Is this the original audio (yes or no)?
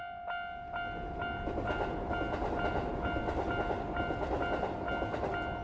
yes